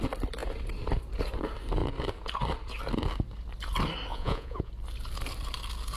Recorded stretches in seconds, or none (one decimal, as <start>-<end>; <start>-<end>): 0.0-4.1; 4.7-6.0